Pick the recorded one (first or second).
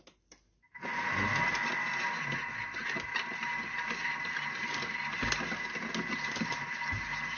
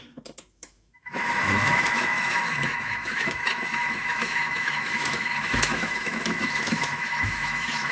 first